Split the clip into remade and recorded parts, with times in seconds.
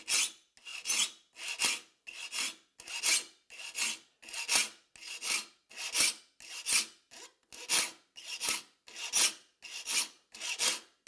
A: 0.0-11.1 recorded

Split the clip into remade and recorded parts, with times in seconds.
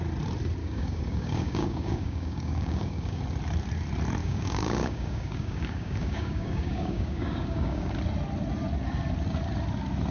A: 0.0-0.6 recorded; 0.6-3.2 remade; 3.2-4.2 recorded; 4.2-7.9 remade; 7.9-10.1 recorded